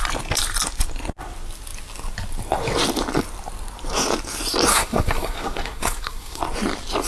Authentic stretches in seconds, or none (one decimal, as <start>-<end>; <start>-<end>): 0.0-4.7; 6.4-7.1